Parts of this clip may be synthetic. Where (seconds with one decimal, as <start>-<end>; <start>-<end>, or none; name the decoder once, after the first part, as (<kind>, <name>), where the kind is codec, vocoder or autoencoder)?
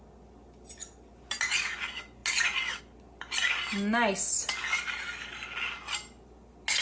none